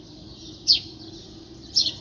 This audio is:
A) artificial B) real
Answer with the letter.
B